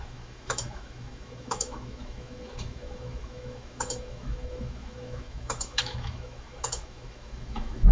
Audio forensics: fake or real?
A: fake